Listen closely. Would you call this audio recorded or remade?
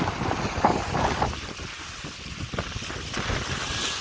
recorded